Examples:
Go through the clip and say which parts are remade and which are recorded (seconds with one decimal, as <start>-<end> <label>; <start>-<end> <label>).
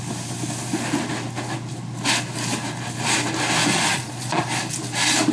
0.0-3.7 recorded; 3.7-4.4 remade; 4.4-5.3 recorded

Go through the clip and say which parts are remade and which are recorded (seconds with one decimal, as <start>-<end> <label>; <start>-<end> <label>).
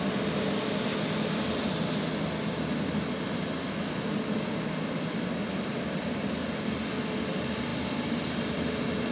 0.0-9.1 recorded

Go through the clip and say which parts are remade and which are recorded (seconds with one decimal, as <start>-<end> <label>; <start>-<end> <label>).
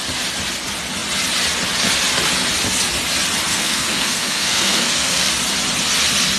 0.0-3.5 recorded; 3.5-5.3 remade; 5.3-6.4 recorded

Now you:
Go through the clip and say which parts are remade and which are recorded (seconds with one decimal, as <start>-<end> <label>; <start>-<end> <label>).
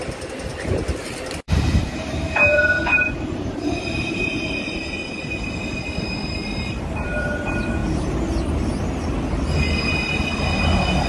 0.0-0.5 recorded; 0.5-5.2 remade; 5.2-6.4 recorded; 6.4-7.2 remade; 7.2-11.1 recorded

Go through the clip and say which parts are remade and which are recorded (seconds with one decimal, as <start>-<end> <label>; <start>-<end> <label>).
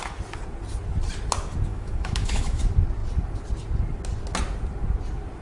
0.0-1.7 recorded; 1.7-2.6 remade; 2.6-5.4 recorded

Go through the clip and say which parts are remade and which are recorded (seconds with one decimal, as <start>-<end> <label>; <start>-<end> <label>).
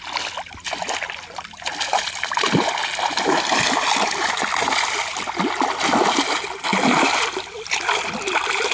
0.0-8.7 recorded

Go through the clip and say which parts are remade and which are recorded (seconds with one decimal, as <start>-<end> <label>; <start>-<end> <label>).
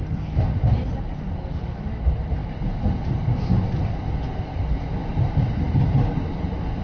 0.0-6.8 recorded